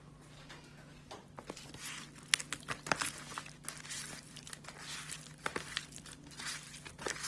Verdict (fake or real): real